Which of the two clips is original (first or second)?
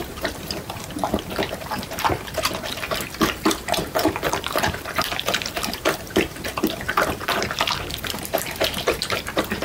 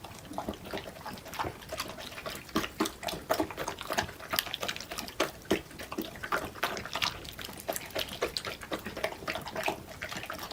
second